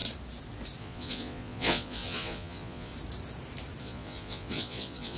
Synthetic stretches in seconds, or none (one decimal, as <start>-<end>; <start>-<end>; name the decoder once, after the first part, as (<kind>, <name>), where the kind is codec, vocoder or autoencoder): 0.8-2.9 (vocoder, Vocos); 3.8-5.2